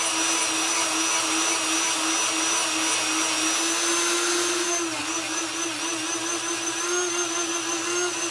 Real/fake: real